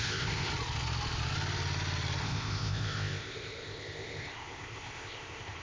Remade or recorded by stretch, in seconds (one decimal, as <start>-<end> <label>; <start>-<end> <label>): 0.0-0.5 remade; 0.5-2.2 recorded; 2.2-5.6 remade